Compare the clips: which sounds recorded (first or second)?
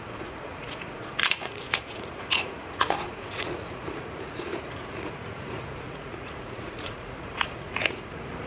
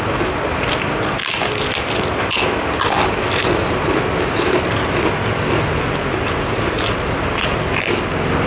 second